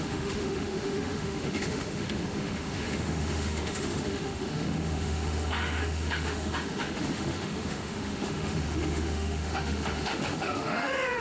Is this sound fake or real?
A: fake